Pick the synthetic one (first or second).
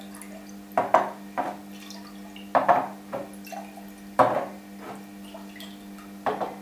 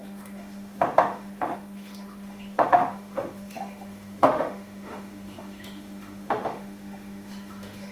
second